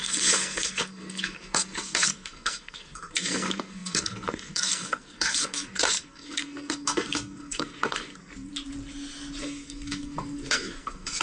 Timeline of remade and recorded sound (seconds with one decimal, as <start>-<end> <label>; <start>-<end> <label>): 0.0-8.5 remade; 8.5-9.4 recorded; 9.4-11.2 remade